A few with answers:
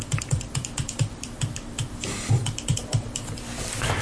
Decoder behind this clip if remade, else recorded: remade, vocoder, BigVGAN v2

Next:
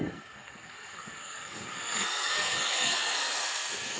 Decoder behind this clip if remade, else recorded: remade, codec, SNAC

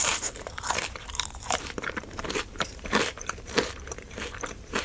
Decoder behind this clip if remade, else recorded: remade, vocoder, BigVGAN v2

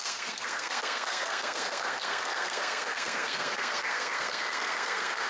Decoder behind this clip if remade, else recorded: remade, codec, SNAC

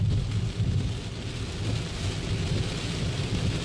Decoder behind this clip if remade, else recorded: recorded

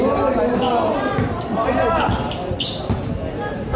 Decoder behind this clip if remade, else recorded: recorded